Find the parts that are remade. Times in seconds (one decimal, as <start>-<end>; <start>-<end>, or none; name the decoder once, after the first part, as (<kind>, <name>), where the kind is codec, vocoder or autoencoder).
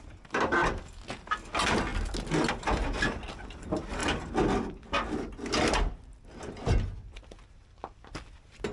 none